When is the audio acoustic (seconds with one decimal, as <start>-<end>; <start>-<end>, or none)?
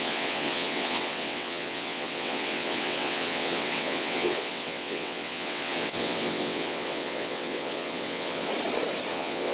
8.5-9.1